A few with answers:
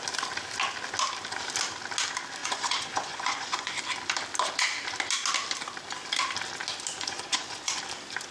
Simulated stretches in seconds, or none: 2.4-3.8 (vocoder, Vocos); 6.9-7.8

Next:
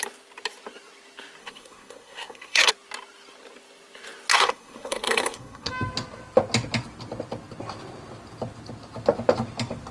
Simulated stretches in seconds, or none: 1.4-2.7 (codec, SNAC); 4.3-5.7

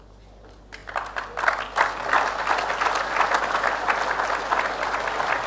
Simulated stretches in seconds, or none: none

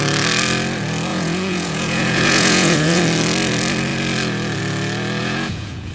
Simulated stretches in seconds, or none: 1.1-3.0 (vocoder, Vocos); 5.2-5.9